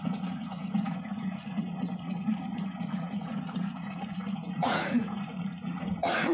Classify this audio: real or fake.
fake